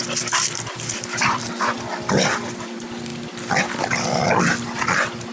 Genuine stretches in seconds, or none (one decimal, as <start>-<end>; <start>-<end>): 3.1-5.3

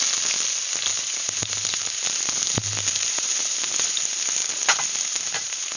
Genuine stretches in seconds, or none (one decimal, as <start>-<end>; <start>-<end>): 0.0-0.9; 4.0-4.4

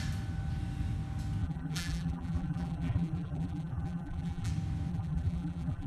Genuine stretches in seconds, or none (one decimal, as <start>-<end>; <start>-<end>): 0.0-1.4; 4.5-4.9

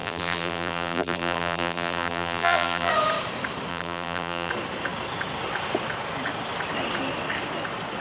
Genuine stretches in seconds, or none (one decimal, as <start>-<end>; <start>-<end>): 2.9-3.7; 4.5-8.0

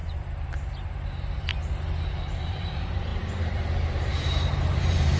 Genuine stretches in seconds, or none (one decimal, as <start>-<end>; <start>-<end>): 1.5-2.2

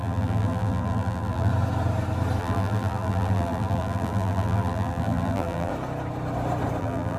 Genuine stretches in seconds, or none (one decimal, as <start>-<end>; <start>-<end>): 1.5-2.4; 5.7-6.8

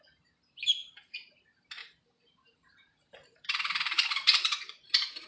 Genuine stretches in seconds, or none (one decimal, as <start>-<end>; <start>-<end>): 0.0-0.8; 1.4-1.8